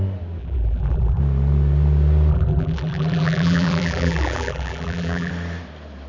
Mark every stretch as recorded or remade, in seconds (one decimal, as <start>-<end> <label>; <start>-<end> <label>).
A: 0.0-0.4 recorded; 0.4-1.2 remade; 1.2-2.3 recorded; 2.3-5.3 remade; 5.3-6.1 recorded

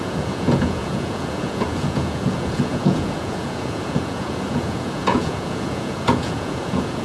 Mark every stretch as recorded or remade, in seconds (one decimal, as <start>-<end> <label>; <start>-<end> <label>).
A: 0.0-7.0 remade

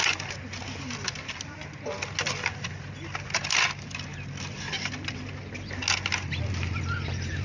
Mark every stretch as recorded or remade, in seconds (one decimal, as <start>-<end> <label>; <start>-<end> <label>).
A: 0.0-7.4 recorded

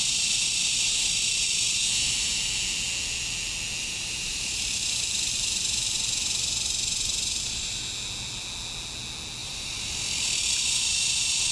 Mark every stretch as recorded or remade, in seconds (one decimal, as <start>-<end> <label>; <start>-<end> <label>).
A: 0.0-3.8 recorded; 3.8-7.8 remade; 7.8-9.4 recorded; 9.4-10.5 remade; 10.5-11.5 recorded